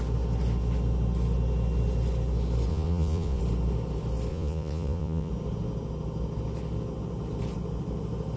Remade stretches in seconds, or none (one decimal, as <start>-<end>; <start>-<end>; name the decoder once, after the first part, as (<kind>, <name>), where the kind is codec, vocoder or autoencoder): 2.7-3.4 (vocoder, Vocos); 4.3-5.3